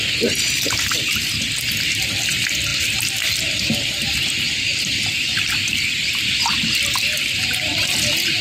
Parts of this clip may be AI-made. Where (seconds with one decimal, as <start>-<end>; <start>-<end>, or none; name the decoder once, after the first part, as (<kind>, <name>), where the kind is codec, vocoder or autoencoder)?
2.7-6.4 (vocoder, BigVGAN v2)